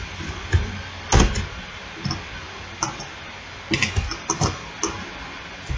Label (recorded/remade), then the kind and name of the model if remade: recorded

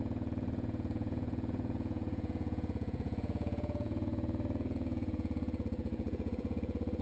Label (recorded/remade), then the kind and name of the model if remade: remade, vocoder, Vocos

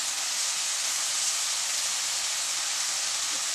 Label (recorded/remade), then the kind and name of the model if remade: recorded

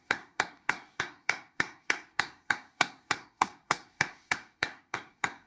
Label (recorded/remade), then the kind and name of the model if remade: remade, codec, SNAC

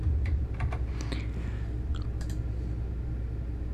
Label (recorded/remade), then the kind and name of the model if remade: recorded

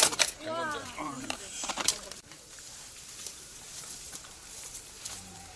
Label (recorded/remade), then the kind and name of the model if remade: remade, vocoder, BigVGAN v2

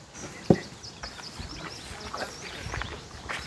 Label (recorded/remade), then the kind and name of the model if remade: recorded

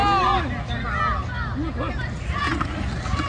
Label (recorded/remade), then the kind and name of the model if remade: recorded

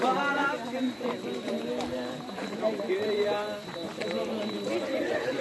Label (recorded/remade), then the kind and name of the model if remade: remade, vocoder, BigVGAN v2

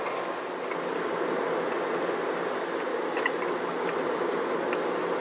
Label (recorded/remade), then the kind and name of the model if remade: recorded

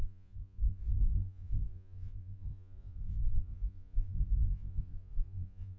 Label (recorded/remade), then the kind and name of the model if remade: remade, vocoder, Vocos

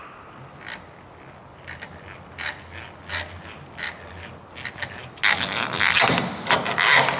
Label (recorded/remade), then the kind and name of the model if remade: recorded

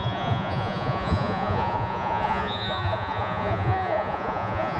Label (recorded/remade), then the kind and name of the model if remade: remade, vocoder, Vocos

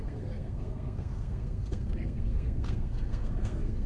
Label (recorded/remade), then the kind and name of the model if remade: remade, codec, SNAC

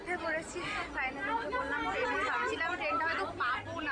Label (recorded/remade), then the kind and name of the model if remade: recorded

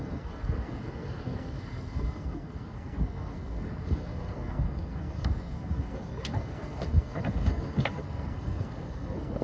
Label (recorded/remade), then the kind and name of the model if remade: remade, codec, SNAC